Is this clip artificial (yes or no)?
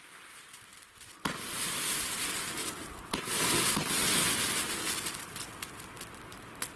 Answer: no